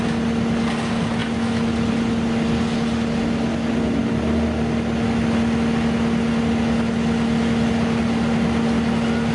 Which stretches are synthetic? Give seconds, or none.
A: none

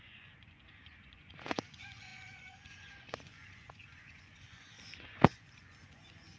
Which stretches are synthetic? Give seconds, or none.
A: 0.0-6.4 (vocoder, Vocos)

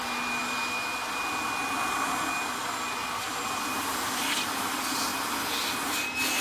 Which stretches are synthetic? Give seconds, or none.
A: none

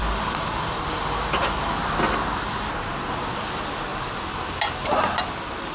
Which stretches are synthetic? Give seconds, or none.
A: none

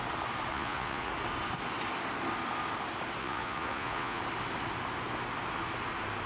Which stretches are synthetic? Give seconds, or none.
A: 0.5-1.1 (vocoder, Vocos); 3.2-4.2

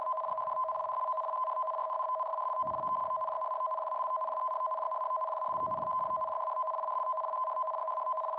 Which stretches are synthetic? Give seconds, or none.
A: 1.8-2.3 (vocoder, Vocos)

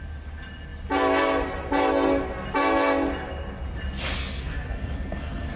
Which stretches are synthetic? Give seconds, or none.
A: 4.2-5.5 (codec, SNAC)

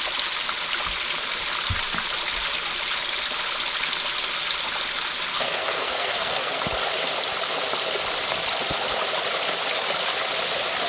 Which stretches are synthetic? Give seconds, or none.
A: 5.3-6.6 (codec, SNAC)